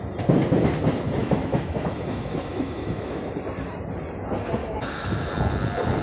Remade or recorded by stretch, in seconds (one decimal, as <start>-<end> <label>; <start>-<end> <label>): 0.0-1.2 recorded; 1.2-3.2 remade; 3.2-4.6 recorded; 4.6-5.3 remade; 5.3-6.0 recorded